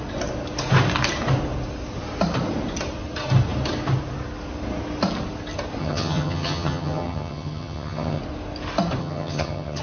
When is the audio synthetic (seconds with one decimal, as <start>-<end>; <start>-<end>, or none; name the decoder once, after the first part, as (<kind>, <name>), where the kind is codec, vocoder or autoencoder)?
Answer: 5.8-8.2 (vocoder, HiFi-GAN); 9.0-9.8